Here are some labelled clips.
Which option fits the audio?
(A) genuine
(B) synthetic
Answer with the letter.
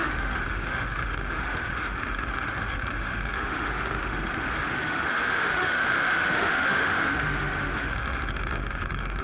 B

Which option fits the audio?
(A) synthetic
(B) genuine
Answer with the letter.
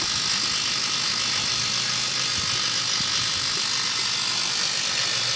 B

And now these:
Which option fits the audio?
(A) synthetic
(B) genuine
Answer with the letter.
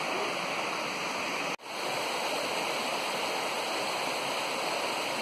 B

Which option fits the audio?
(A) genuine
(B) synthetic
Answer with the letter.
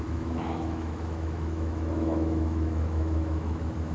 B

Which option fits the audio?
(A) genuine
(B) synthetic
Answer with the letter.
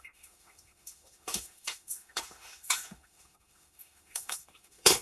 B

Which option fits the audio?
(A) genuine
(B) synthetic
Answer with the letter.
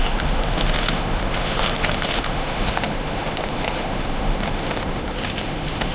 B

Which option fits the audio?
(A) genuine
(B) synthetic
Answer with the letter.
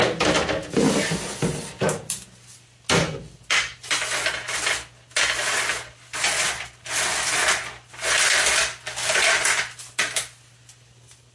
A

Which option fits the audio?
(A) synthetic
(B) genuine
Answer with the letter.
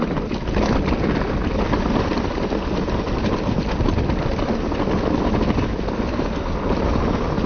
B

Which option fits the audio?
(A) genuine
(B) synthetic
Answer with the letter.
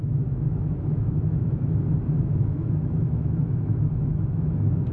B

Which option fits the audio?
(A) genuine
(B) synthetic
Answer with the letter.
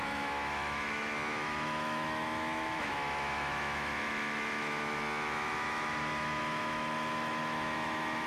B